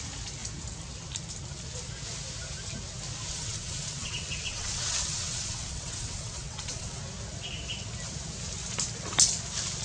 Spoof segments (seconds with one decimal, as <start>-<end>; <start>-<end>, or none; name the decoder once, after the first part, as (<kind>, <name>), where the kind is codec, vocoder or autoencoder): 3.3-7.0 (vocoder, WaveNeXt)

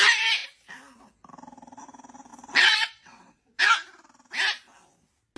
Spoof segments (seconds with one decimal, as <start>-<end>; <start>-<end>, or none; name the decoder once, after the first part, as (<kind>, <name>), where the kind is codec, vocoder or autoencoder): 2.3-3.6 (vocoder, WaveNeXt)